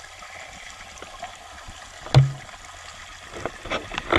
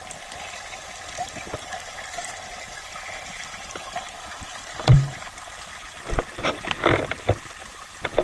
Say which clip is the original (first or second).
first